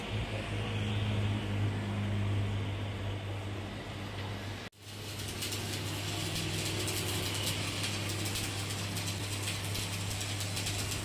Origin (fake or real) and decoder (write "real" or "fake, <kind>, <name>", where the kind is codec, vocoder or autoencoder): real